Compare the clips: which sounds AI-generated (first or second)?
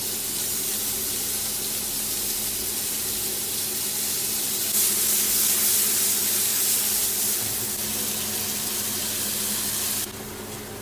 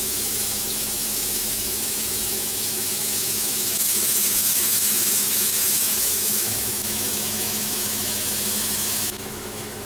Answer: second